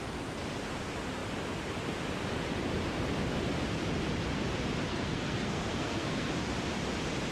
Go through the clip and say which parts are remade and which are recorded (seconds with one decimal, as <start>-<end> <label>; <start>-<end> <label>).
0.0-4.9 recorded; 4.9-6.3 remade; 6.3-7.3 recorded